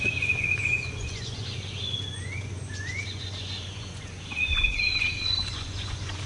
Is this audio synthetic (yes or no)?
yes